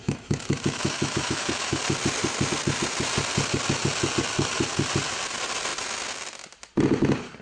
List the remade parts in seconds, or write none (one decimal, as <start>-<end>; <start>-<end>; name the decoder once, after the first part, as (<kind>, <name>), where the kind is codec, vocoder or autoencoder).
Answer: 0.0-1.8 (autoencoder, DAC-VAE)